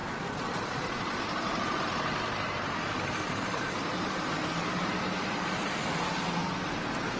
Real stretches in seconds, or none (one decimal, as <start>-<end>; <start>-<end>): 6.4-7.2